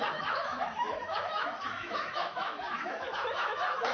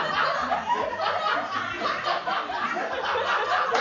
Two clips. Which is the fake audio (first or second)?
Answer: first